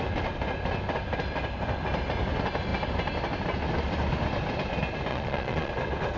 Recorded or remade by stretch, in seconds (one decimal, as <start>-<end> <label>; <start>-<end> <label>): 0.0-5.1 recorded; 5.1-5.7 remade; 5.7-6.2 recorded